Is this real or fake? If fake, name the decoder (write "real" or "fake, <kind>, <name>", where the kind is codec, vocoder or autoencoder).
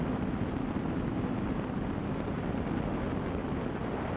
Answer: real